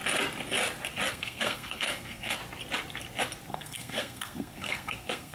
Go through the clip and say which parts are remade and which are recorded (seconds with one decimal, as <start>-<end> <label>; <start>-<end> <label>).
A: 0.0-1.1 recorded; 1.1-2.4 remade; 2.4-3.5 recorded; 3.5-5.3 remade